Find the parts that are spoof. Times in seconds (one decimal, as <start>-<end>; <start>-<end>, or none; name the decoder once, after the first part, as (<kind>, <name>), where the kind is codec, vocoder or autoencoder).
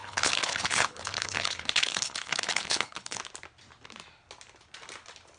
0.0-3.2 (codec, HILCodec)